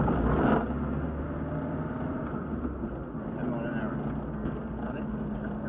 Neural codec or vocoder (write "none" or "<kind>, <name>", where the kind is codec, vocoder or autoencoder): none